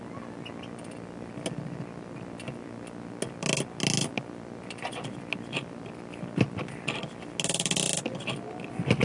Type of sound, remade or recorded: recorded